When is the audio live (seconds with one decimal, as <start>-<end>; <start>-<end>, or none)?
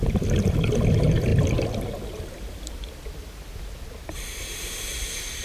0.0-5.4